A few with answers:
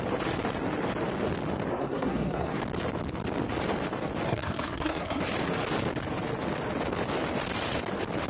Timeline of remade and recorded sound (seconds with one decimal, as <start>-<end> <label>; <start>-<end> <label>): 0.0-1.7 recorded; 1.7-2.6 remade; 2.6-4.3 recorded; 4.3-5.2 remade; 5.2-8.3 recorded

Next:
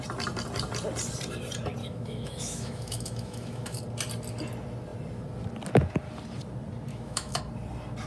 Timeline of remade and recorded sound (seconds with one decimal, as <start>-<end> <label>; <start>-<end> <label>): 0.0-1.8 recorded; 1.8-3.8 remade; 3.8-6.9 recorded; 6.9-7.4 remade; 7.4-8.1 recorded

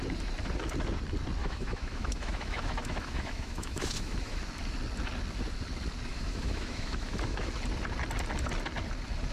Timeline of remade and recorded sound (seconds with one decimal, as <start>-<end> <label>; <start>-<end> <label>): 0.0-1.4 recorded; 1.4-4.4 remade; 4.4-6.1 recorded; 6.1-7.5 remade; 7.5-9.3 recorded

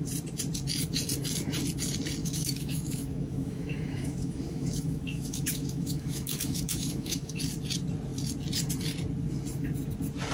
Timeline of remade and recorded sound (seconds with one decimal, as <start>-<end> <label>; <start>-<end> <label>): 0.0-2.2 recorded; 2.2-7.4 remade; 7.4-10.3 recorded

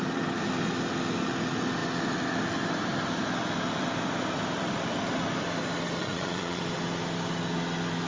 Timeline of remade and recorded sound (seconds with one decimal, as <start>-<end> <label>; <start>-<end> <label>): 0.0-6.0 recorded; 6.0-6.6 remade; 6.6-8.1 recorded

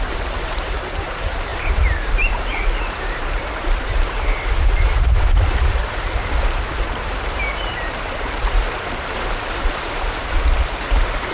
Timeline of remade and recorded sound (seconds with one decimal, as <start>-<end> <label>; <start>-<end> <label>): 0.0-10.2 remade; 10.2-10.8 recorded; 10.8-11.3 remade

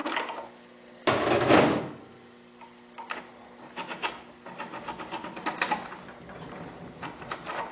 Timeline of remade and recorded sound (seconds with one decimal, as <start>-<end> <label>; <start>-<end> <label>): 0.0-7.7 recorded

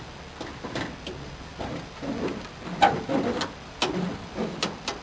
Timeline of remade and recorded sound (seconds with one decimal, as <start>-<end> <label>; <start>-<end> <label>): 0.0-5.0 recorded